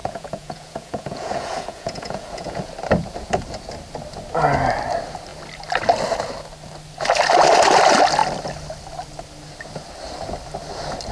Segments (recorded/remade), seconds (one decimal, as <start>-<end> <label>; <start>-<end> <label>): 0.0-2.7 remade; 2.7-11.1 recorded